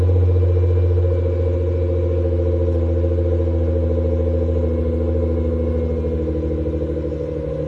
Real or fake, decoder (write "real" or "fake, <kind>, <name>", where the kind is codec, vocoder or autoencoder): real